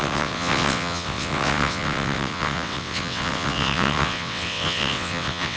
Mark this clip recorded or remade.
remade